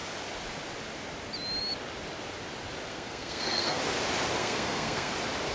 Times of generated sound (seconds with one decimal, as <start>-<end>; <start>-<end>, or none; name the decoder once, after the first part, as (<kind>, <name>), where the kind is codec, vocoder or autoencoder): 2.9-3.8 (codec, SNAC); 4.4-5.1